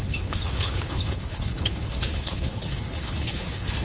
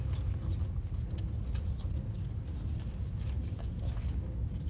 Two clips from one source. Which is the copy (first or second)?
first